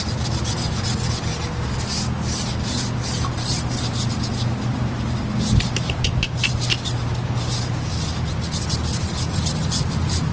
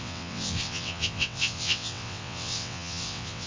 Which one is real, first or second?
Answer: first